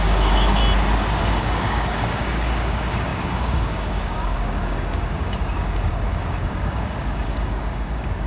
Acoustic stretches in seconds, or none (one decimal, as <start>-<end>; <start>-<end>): 0.6-1.2